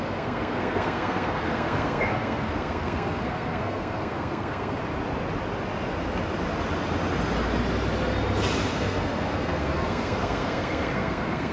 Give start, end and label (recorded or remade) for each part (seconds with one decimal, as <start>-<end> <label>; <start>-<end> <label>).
0.0-4.8 remade; 4.8-8.7 recorded; 8.7-11.5 remade